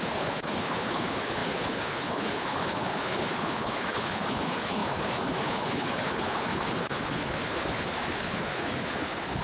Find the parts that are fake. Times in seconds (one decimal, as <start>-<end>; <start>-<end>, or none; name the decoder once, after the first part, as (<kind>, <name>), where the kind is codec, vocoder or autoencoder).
0.0-9.4 (codec, HILCodec)